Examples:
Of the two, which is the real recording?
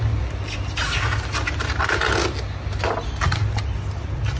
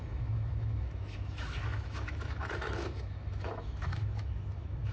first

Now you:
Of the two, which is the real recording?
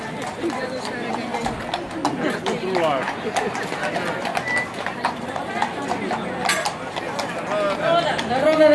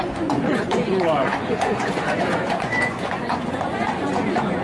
first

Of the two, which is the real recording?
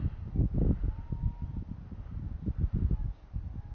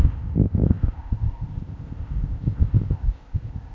first